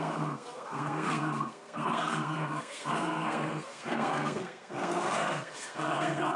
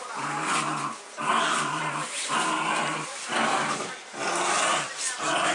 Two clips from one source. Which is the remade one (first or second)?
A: first